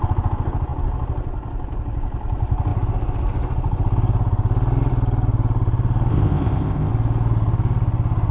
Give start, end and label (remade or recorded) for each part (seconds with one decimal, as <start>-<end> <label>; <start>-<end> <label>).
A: 0.0-6.1 recorded; 6.1-6.9 remade; 6.9-8.3 recorded